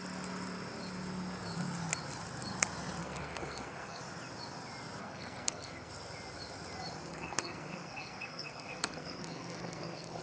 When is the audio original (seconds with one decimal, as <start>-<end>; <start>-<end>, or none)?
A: 0.0-3.0; 4.0-5.0; 5.9-7.1